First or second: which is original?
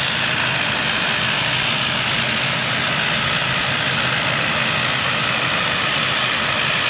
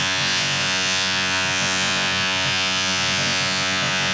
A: first